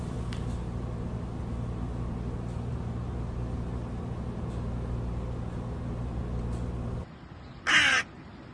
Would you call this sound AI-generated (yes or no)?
no